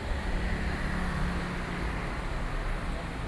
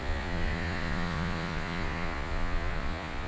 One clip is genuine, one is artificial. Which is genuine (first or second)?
first